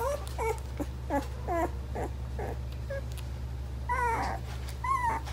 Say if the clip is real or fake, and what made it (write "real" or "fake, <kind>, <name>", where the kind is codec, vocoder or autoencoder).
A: real